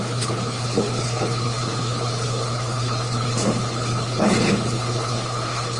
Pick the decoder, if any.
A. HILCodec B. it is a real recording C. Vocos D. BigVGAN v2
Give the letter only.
A